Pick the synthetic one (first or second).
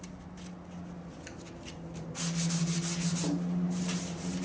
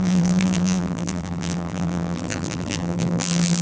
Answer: second